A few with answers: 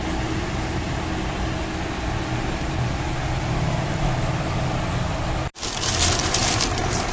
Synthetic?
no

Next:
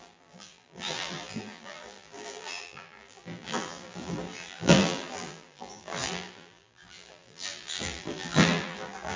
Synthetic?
yes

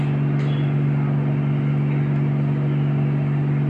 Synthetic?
no